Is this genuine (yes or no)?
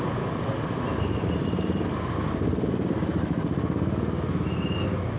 yes